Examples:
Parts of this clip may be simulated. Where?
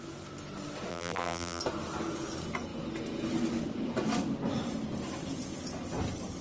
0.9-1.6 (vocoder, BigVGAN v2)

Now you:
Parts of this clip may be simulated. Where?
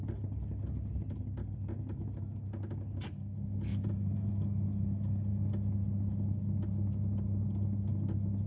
3.7-4.3 (vocoder, BigVGAN v2)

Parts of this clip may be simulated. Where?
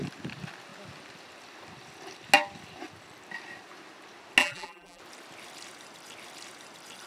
4.4-5.0 (vocoder, BigVGAN v2)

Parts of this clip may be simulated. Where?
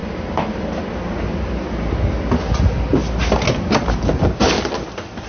none